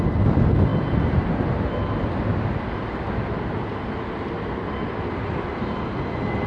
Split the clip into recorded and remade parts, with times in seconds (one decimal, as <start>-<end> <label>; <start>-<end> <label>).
0.0-6.5 recorded